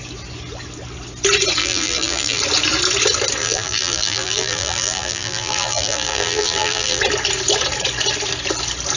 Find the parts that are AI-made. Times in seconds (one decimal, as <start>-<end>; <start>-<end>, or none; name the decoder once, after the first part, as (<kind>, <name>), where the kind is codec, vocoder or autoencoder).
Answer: 1.6-2.4 (vocoder, BigVGAN v2); 3.4-7.0